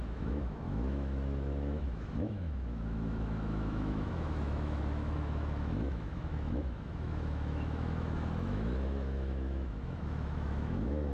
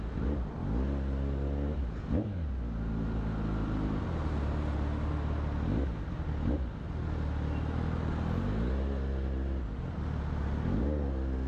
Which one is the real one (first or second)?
second